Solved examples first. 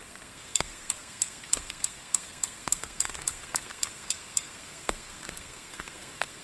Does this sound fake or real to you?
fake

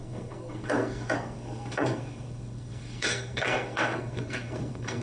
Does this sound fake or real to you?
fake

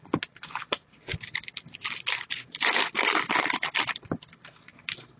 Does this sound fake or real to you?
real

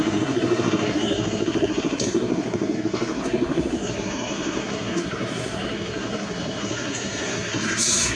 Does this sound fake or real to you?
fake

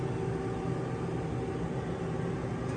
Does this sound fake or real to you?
real